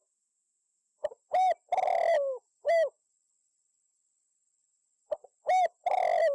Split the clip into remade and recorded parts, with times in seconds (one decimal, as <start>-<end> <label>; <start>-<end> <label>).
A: 0.0-1.1 remade; 1.1-6.3 recorded